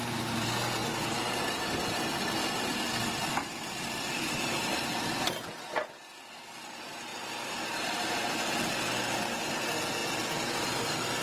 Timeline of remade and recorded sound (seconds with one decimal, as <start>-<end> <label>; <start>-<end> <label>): 0.0-7.1 recorded; 7.1-8.7 remade; 8.7-10.0 recorded; 10.0-11.2 remade